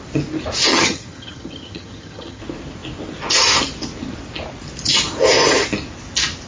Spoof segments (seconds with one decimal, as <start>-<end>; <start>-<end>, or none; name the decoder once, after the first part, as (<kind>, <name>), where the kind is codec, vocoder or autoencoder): 0.7-2.4 (vocoder, HiFi-GAN)